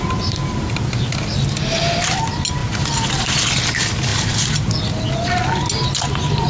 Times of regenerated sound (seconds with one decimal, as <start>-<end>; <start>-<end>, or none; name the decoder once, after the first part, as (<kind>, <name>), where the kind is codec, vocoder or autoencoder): none